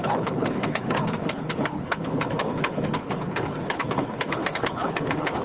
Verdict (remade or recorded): remade